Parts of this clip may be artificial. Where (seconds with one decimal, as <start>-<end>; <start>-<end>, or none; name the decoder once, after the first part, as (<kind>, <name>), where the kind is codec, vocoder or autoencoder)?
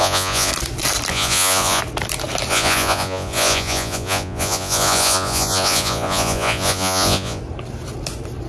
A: 0.0-0.5 (vocoder, Vocos); 1.1-1.8; 2.5-7.4